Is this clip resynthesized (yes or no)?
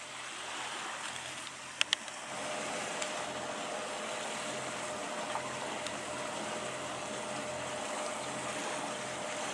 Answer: no